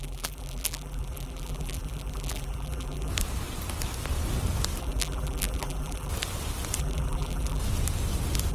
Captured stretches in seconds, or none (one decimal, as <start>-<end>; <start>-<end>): 3.1-4.8; 6.1-6.8; 7.6-8.5